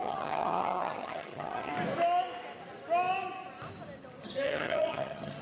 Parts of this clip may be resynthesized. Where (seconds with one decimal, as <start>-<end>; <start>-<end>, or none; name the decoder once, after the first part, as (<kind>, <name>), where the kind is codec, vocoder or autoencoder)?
0.0-1.7 (vocoder, HiFi-GAN); 4.2-5.4